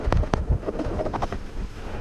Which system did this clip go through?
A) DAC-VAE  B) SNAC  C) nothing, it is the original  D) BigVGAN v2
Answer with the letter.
A